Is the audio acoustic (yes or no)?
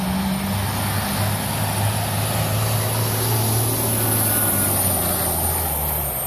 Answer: yes